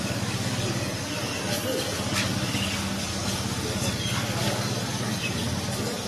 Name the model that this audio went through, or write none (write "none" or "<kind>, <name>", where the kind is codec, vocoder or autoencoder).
codec, DAC